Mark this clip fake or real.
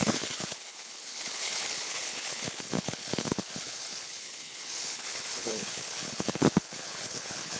fake